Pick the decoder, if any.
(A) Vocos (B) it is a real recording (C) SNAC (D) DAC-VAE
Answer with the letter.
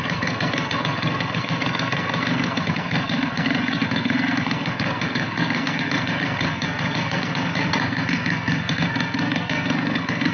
C